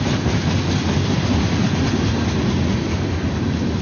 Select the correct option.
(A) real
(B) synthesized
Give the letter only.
A